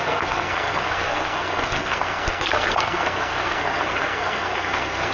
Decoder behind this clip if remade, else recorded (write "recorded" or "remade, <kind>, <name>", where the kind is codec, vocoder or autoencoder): remade, codec, SNAC